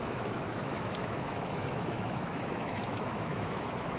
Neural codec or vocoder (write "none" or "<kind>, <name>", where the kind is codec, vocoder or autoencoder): autoencoder, DAC-VAE